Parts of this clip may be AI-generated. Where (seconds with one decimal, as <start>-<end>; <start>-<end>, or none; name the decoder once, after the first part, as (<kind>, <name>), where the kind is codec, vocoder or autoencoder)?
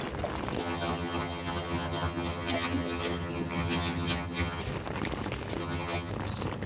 0.6-4.6 (vocoder, HiFi-GAN); 5.6-6.1